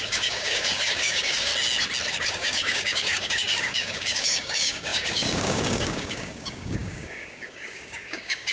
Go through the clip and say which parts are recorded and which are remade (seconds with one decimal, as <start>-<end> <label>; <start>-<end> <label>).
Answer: 0.0-1.5 remade; 1.5-2.1 recorded; 2.1-8.5 remade